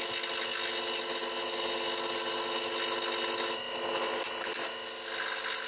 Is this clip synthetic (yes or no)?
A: no